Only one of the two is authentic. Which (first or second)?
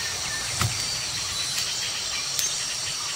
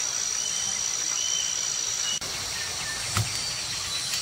second